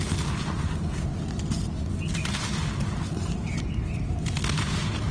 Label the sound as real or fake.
real